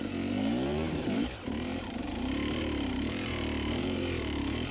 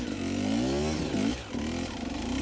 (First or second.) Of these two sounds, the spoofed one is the first